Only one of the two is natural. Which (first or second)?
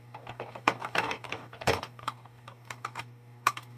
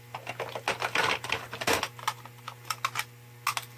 second